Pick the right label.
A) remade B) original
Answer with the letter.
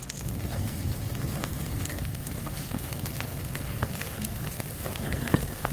A